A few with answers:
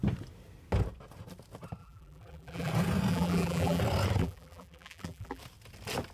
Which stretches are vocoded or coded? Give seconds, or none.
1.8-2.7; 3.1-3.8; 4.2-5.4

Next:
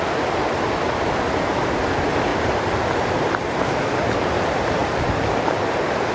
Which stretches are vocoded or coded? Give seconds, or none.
2.3-3.8; 4.8-5.5

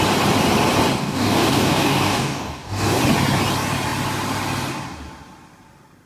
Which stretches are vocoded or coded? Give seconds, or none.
1.0-3.0